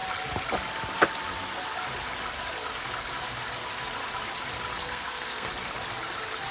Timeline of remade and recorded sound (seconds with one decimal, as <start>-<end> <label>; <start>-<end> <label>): 0.0-4.8 recorded; 4.8-5.5 remade; 5.5-6.5 recorded